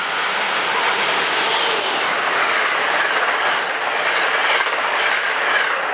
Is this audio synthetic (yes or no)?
no